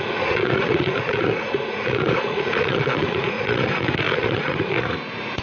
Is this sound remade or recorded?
remade